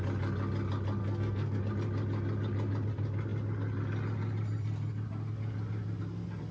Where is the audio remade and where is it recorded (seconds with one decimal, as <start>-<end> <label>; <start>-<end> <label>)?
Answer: 0.0-1.0 recorded; 1.0-1.6 remade; 1.6-6.5 recorded

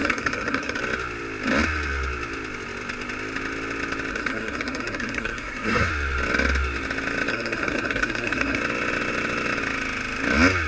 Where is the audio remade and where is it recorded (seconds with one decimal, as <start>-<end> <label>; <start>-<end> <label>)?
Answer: 0.0-0.8 remade; 0.8-4.1 recorded; 4.1-5.9 remade; 5.9-7.3 recorded; 7.3-8.6 remade; 8.6-10.7 recorded

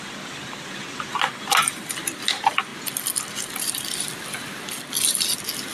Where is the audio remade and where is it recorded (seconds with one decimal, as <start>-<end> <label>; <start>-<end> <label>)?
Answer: 0.0-5.7 recorded

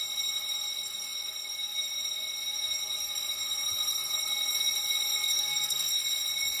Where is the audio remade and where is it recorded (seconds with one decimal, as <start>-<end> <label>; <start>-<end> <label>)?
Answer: 0.0-5.3 recorded; 5.3-5.9 remade; 5.9-6.6 recorded

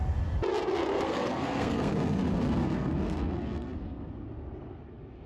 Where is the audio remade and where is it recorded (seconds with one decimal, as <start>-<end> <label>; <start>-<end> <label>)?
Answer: 0.0-0.9 recorded; 0.9-4.1 remade; 4.1-5.3 recorded

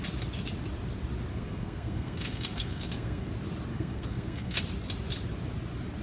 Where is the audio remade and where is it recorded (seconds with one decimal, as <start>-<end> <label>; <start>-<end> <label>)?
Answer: 0.0-1.3 recorded; 1.3-3.3 remade; 3.3-3.7 recorded; 3.7-4.6 remade; 4.6-6.0 recorded

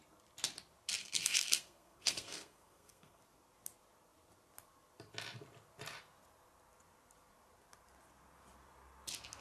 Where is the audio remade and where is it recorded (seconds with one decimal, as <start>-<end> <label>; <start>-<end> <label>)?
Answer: 0.0-1.0 recorded; 1.0-3.2 remade; 3.2-9.4 recorded

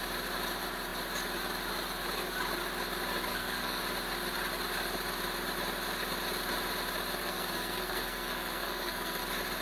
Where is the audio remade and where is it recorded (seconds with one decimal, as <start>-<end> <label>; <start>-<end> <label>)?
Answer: 0.0-3.3 recorded; 3.3-3.8 remade; 3.8-7.2 recorded; 7.2-9.2 remade; 9.2-9.6 recorded